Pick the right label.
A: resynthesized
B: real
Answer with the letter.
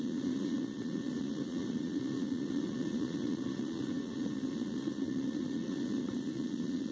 A